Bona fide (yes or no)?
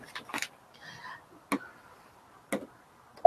yes